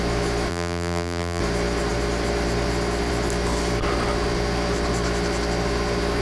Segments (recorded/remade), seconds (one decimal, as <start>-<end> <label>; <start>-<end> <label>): 0.0-0.5 recorded; 0.5-1.4 remade; 1.4-6.2 recorded